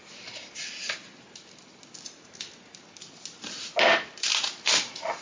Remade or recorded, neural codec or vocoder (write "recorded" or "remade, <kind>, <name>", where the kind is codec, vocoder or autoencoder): recorded